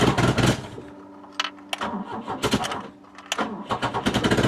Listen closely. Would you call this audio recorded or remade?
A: recorded